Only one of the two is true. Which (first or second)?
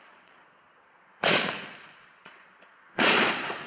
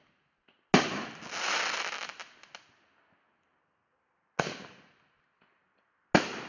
second